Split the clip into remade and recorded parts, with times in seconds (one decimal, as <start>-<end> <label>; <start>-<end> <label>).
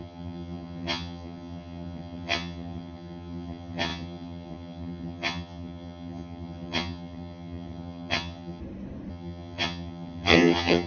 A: 0.0-8.6 remade; 8.6-9.1 recorded; 9.1-10.9 remade